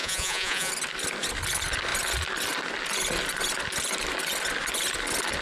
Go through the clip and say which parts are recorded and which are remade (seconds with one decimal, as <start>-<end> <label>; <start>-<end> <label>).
0.0-0.7 remade; 0.7-5.4 recorded